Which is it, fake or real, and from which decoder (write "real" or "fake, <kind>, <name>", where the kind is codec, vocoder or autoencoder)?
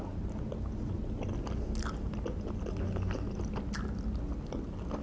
real